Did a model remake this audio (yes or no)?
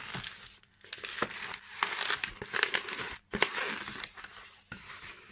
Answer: no